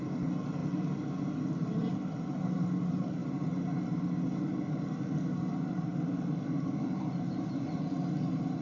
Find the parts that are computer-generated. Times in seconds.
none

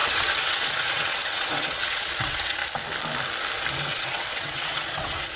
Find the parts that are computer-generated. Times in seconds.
0.0-2.6 (vocoder, WaveNeXt); 3.8-5.4

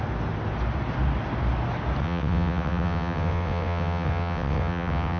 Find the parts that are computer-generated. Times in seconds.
2.0-5.2 (vocoder, WaveNeXt)

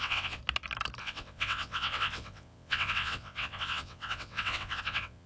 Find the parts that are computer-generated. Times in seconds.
0.0-0.4 (vocoder, WaveNeXt); 1.0-5.3